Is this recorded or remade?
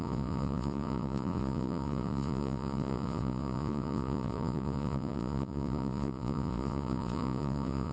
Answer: remade